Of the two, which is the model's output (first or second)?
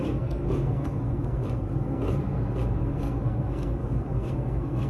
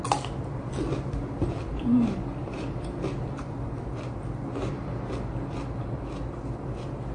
first